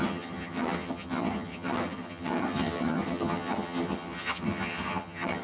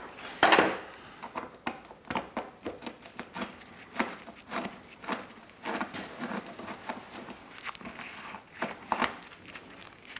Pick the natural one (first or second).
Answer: second